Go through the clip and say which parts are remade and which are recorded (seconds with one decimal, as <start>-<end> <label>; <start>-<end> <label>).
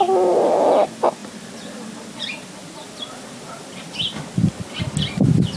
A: 0.0-5.6 recorded